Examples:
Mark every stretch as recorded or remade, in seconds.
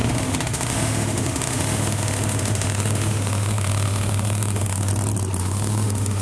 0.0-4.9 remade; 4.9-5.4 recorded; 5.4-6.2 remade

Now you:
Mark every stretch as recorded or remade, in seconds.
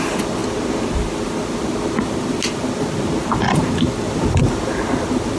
0.0-5.4 recorded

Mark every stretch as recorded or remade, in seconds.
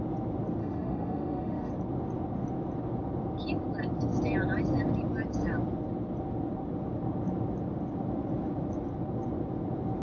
0.0-0.6 recorded; 0.6-1.7 remade; 1.7-10.0 recorded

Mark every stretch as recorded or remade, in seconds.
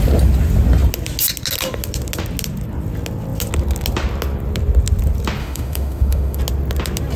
0.0-5.4 recorded; 5.4-6.4 remade; 6.4-7.2 recorded